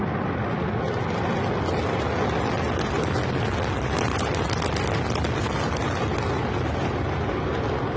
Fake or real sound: real